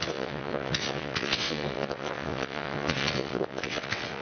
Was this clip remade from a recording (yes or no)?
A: yes